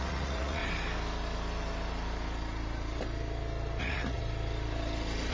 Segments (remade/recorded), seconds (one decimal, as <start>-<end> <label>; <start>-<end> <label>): 0.0-0.6 remade; 0.6-3.8 recorded; 3.8-4.2 remade; 4.2-5.3 recorded